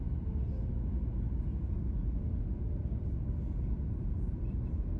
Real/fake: real